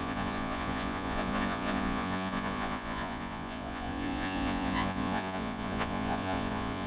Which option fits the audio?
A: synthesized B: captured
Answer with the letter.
A